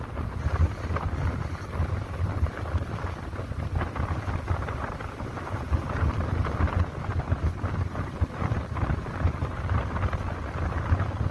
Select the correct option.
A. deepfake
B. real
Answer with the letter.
B